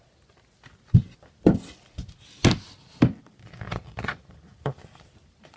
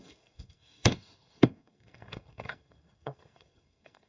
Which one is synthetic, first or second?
second